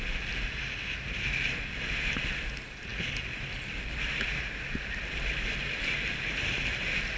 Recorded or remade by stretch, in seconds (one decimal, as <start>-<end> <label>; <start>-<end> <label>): 0.0-7.2 recorded